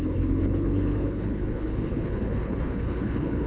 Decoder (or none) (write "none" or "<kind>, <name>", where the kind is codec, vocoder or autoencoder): codec, HILCodec